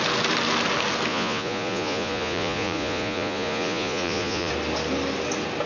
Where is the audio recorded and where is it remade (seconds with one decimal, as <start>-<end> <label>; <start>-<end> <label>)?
0.0-1.1 recorded; 1.1-4.5 remade; 4.5-5.7 recorded